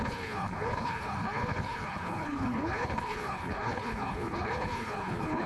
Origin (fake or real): fake